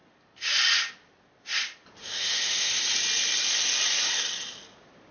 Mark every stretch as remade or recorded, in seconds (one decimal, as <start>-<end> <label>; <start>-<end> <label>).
0.0-2.0 recorded; 2.0-2.8 remade; 2.8-5.1 recorded